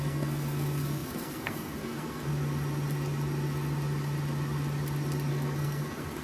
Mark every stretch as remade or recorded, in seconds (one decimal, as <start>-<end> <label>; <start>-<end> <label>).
0.0-2.3 remade; 2.3-5.3 recorded; 5.3-6.2 remade

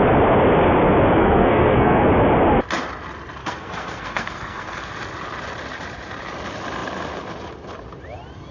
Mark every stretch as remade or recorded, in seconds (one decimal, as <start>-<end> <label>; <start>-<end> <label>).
0.0-1.2 recorded; 1.2-2.1 remade; 2.1-3.4 recorded; 3.4-4.9 remade; 4.9-8.5 recorded

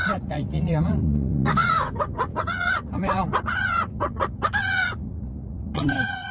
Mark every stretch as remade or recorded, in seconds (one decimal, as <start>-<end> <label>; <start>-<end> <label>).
0.0-6.3 remade

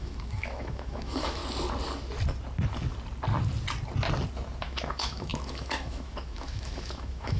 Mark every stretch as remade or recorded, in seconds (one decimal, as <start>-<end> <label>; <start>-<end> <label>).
0.0-1.4 remade; 1.4-4.6 recorded; 4.6-7.4 remade

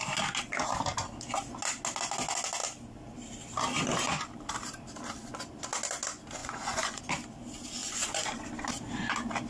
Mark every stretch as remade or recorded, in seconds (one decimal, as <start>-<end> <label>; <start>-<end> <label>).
0.0-6.4 recorded; 6.4-7.0 remade; 7.0-7.8 recorded; 7.8-8.4 remade; 8.4-9.5 recorded

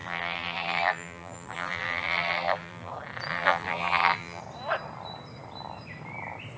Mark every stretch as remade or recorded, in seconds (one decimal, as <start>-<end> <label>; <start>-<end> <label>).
0.0-2.9 remade; 2.9-3.3 recorded; 3.3-4.4 remade; 4.4-6.6 recorded